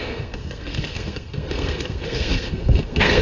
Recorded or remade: remade